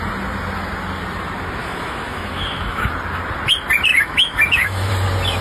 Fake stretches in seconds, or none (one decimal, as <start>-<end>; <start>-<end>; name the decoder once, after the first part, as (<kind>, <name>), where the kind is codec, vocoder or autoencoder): 1.6-2.9 (autoencoder, DAC-VAE); 3.9-4.9